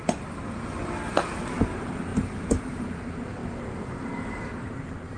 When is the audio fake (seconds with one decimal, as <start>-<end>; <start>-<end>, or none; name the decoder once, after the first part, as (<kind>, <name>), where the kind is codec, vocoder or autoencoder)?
3.4-5.2 (vocoder, BigVGAN v2)